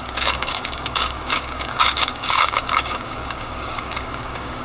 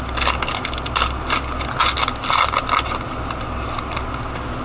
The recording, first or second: second